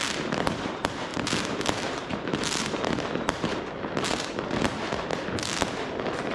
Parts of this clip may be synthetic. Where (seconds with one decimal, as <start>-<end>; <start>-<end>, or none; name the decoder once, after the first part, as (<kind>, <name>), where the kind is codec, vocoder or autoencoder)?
0.0-5.2 (vocoder, BigVGAN v2)